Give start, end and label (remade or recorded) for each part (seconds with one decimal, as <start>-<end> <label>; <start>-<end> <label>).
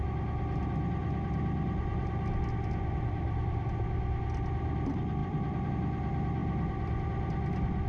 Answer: 0.0-1.0 recorded; 1.0-3.7 remade; 3.7-5.2 recorded; 5.2-5.7 remade; 5.7-6.4 recorded; 6.4-7.0 remade; 7.0-7.9 recorded